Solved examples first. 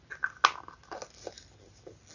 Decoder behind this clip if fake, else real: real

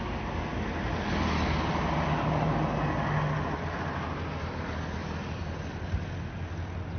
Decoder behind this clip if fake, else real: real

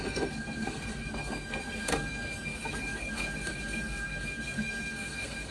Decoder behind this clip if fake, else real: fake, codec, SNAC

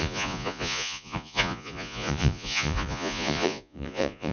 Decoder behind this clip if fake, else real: fake, vocoder, Vocos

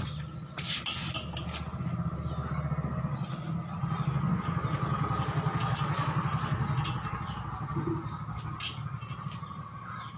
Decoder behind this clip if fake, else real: real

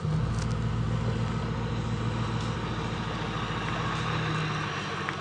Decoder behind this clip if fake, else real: real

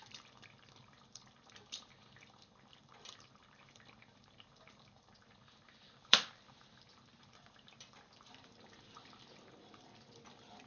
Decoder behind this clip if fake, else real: fake, vocoder, BigVGAN v2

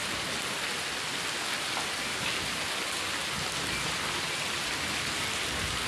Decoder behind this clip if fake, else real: real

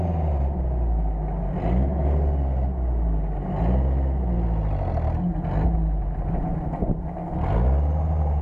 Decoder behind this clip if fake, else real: real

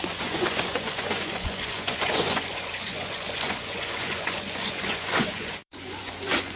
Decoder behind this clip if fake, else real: fake, vocoder, Vocos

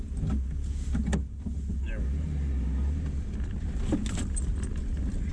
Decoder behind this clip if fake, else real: real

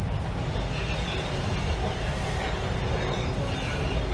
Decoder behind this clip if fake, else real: real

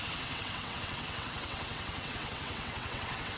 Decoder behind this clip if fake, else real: fake, vocoder, WaveNeXt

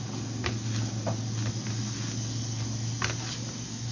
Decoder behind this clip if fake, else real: real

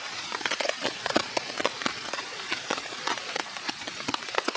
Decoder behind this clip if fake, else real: fake, vocoder, Vocos